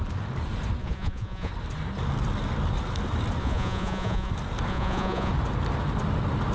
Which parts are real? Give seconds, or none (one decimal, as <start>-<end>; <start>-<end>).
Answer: 0.0-0.8; 1.5-3.4; 4.3-4.7; 5.3-6.5